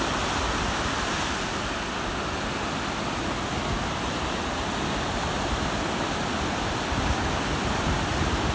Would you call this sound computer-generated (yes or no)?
no